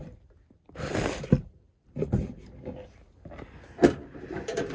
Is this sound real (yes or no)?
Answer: yes